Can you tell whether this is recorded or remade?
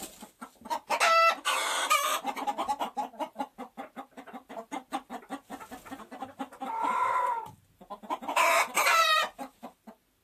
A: recorded